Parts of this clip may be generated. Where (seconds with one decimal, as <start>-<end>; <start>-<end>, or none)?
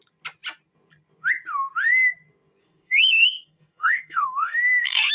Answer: 2.6-5.1